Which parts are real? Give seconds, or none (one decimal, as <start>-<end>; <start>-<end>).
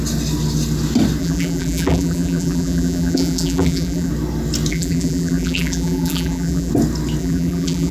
0.0-1.2; 4.1-4.7; 6.7-7.2